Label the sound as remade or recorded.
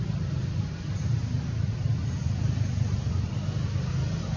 recorded